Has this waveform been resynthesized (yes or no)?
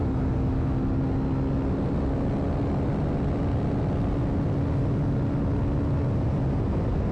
no